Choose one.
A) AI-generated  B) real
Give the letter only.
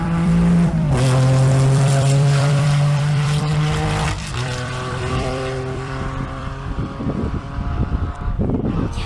A